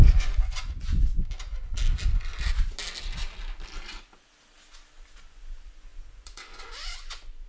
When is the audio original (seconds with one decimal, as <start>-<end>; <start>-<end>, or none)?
1.1-5.2